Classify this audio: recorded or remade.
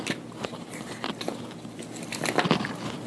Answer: recorded